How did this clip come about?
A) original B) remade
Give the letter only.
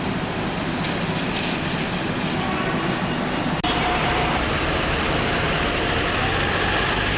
A